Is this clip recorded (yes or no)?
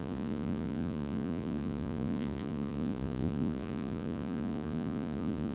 no